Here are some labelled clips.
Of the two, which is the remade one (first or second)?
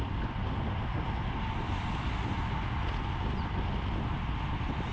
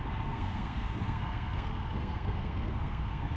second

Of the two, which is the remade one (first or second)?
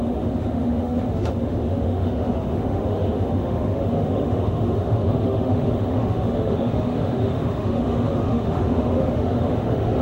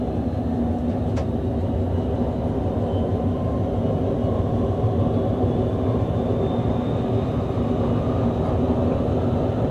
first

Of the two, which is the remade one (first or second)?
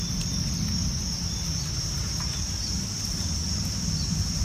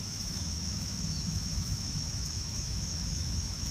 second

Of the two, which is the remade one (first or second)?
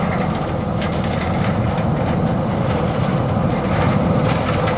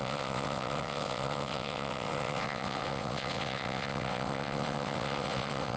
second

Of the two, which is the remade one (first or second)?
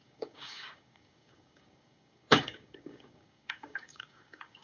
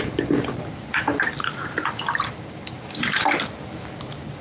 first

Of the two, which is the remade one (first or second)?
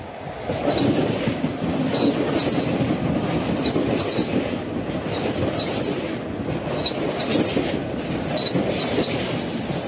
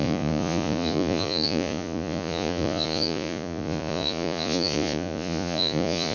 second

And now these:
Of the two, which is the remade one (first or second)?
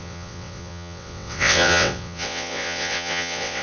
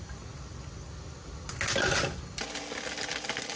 first